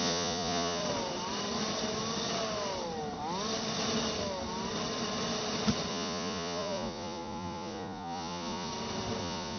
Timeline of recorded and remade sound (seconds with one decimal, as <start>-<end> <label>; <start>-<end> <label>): 0.0-0.8 remade; 0.8-5.9 recorded; 5.9-8.7 remade; 8.7-9.2 recorded; 9.2-9.6 remade